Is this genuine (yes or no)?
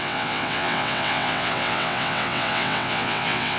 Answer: no